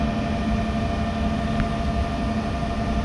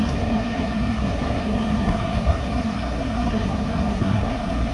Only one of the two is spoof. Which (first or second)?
second